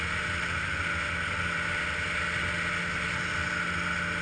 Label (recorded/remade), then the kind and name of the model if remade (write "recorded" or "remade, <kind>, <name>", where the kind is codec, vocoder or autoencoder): recorded